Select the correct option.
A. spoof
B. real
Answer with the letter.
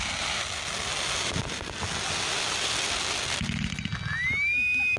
B